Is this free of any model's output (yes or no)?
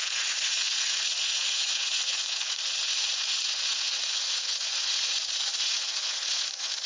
no